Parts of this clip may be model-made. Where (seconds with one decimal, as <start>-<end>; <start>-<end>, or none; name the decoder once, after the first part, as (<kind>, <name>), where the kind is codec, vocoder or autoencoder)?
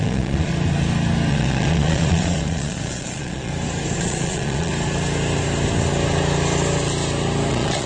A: 0.0-0.5 (vocoder, Vocos); 1.3-3.5; 4.0-4.7; 7.5-7.9